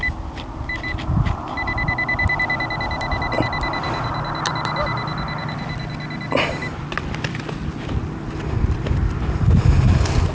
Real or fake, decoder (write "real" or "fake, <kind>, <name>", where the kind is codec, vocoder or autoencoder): real